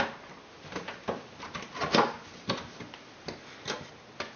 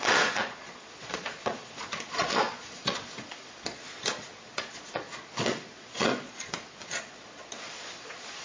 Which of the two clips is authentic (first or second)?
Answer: first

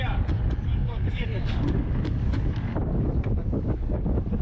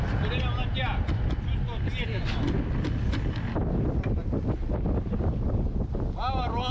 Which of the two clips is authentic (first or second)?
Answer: second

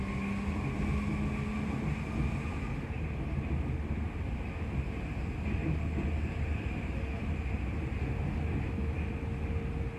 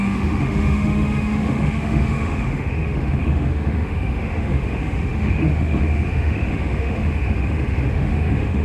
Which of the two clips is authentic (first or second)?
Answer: first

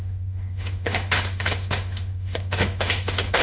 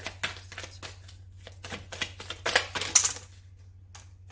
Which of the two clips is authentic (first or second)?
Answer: second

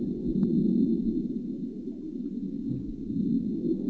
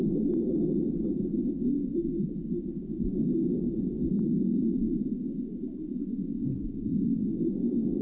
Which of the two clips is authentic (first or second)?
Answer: first